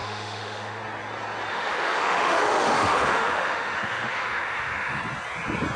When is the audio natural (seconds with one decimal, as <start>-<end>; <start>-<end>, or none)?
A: 0.8-1.5; 5.0-5.8